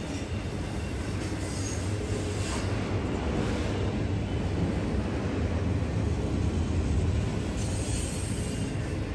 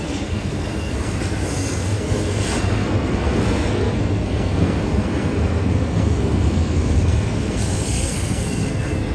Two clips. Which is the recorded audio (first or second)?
first